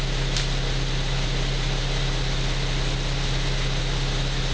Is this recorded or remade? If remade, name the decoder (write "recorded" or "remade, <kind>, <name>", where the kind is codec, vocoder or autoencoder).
recorded